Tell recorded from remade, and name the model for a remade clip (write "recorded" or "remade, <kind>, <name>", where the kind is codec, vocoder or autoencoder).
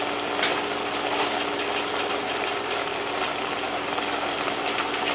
recorded